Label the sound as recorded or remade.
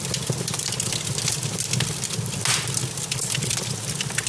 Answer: recorded